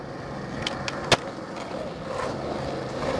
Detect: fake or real real